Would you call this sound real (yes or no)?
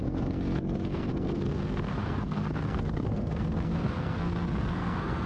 no